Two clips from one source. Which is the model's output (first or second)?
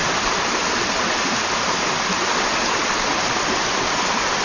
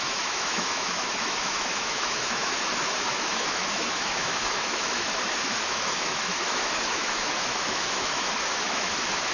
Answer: second